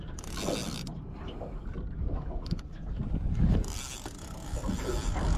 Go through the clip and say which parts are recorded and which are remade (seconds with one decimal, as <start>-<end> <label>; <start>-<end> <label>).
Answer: 0.0-5.4 recorded